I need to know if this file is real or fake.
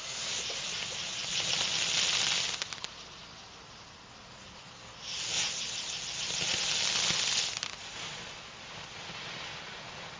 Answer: real